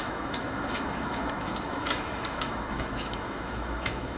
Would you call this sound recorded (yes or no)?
no